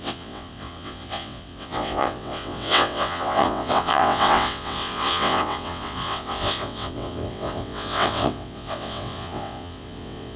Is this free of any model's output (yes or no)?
no